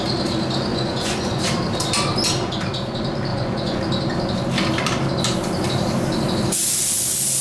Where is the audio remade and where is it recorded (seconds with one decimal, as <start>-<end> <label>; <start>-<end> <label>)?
0.0-0.7 recorded; 0.7-1.4 remade; 1.4-3.3 recorded; 3.3-3.8 remade; 3.8-7.4 recorded